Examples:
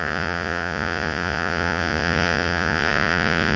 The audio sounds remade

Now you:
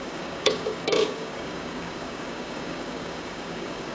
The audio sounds remade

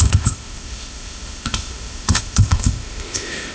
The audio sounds remade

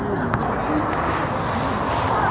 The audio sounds recorded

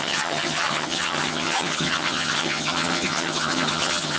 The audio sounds remade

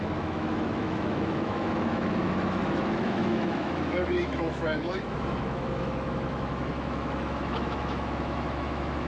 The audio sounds remade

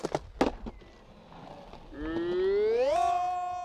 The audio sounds recorded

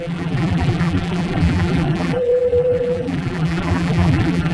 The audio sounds remade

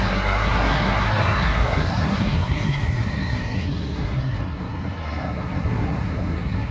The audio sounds remade